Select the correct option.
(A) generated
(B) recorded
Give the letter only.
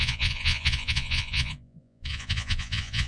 A